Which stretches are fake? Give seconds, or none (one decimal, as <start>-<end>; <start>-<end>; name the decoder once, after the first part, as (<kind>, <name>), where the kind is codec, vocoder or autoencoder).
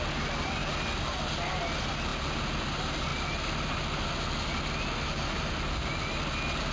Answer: none